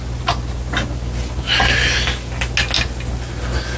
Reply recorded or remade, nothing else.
recorded